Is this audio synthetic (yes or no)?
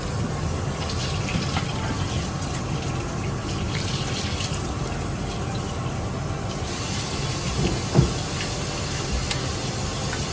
no